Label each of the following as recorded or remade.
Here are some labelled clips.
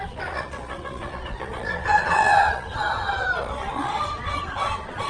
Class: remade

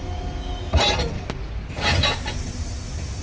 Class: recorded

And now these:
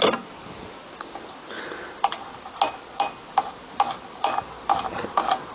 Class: recorded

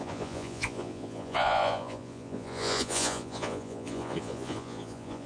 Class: remade